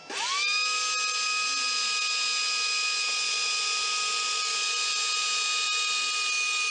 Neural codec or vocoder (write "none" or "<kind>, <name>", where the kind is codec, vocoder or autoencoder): none